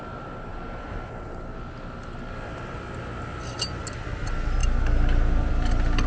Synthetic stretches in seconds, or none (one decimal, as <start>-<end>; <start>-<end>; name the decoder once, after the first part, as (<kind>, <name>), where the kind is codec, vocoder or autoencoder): none